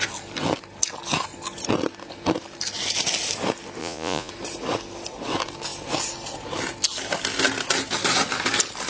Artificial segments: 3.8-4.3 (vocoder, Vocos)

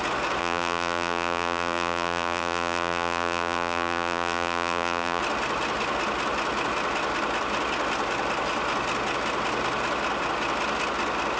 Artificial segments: 0.4-5.2 (vocoder, BigVGAN v2)

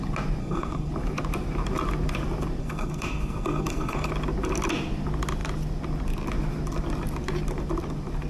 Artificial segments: 0.4-0.9 (codec, SNAC); 2.6-4.1

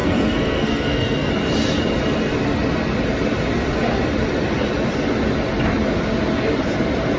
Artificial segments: 0.0-1.3 (codec, SNAC)

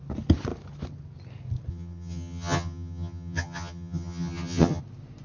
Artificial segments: 1.7-4.8 (vocoder, HiFi-GAN)